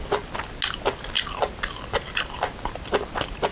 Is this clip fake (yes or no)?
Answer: no